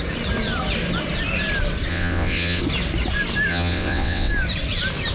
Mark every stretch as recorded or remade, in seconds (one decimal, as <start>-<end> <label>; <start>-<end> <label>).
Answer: 0.0-1.9 recorded; 1.9-2.6 remade; 2.6-3.5 recorded; 3.5-4.3 remade; 4.3-5.1 recorded